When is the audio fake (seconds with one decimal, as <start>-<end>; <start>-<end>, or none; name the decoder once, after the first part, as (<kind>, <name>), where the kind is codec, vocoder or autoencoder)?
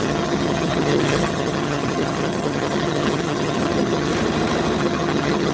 0.0-4.1 (vocoder, HiFi-GAN); 4.8-5.5